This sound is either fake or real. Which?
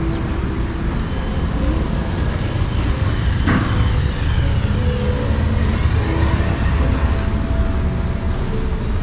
real